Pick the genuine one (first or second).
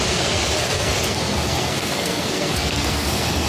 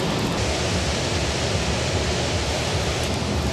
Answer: second